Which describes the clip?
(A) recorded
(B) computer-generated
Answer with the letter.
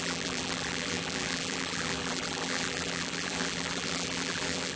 B